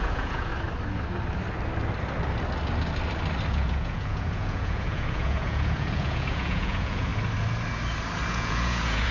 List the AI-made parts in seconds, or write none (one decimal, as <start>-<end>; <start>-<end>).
0.0-0.5; 3.5-7.1; 8.3-9.1